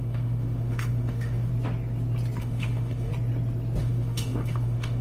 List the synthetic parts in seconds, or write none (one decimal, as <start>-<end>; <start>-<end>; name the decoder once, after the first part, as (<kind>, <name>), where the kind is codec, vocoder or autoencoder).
0.0-1.5 (autoencoder, DAC-VAE); 2.4-3.1; 3.8-5.0